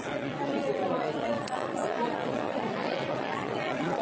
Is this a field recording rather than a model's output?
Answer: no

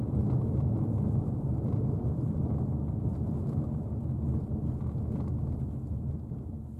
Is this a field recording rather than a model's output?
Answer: yes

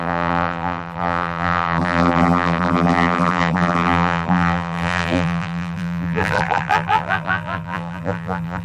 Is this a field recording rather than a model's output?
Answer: no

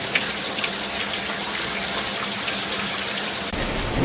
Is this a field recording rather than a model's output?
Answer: yes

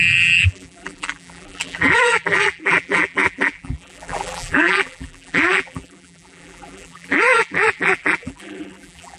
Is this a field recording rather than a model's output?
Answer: no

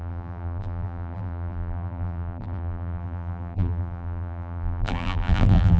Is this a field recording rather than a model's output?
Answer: no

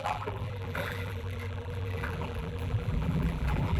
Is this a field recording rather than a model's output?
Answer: no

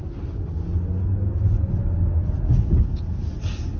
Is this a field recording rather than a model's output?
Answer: yes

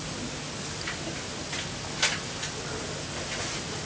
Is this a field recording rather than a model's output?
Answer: yes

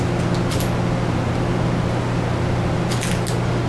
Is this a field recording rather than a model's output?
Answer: yes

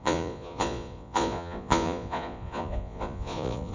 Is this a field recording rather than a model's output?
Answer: no